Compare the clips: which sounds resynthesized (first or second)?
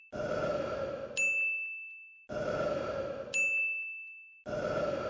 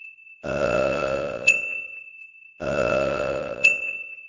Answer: second